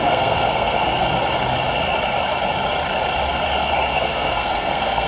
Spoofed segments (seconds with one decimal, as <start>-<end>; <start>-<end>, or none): 0.0-0.8; 3.9-5.1